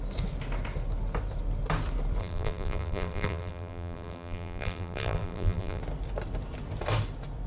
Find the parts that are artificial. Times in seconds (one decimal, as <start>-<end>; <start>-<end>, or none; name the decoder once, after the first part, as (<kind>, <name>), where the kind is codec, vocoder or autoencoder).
2.2-5.8 (vocoder, BigVGAN v2)